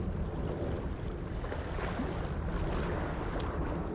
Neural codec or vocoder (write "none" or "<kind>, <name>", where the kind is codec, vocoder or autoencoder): none